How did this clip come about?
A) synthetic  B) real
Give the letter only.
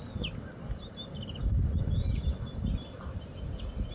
B